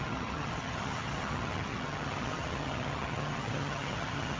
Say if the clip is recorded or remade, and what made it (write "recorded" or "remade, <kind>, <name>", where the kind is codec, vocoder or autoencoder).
remade, vocoder, HiFi-GAN